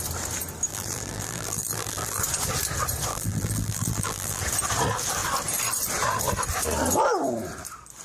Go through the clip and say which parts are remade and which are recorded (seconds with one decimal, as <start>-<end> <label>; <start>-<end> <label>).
0.0-0.7 recorded; 0.7-2.2 remade; 2.2-3.1 recorded; 3.1-4.4 remade; 4.4-8.0 recorded